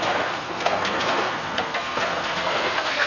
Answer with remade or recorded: remade